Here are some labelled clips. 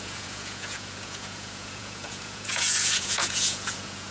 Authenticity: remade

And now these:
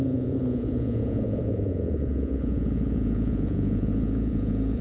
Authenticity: remade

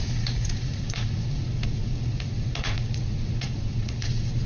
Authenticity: remade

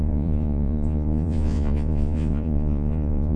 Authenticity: remade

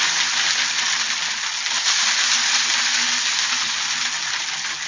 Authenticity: recorded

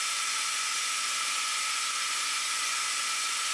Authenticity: remade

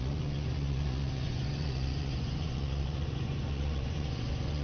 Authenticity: remade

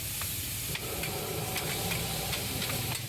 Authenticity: recorded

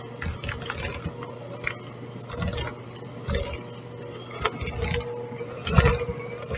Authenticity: recorded